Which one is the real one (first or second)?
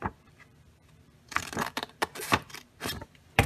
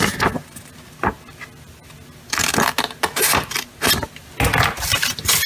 second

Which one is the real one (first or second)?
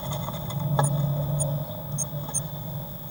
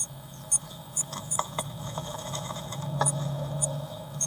first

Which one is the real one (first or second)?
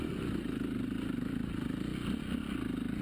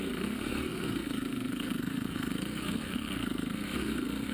first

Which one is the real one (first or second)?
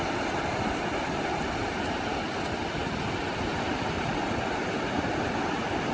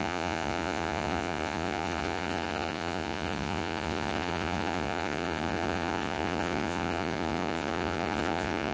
first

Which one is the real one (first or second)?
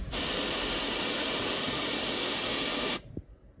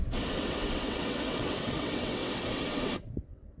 first